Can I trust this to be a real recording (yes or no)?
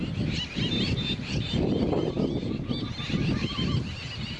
yes